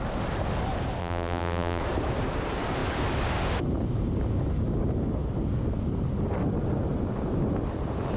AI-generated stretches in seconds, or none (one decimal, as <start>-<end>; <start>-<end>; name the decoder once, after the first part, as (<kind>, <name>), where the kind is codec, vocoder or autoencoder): 1.0-1.8 (vocoder, BigVGAN v2)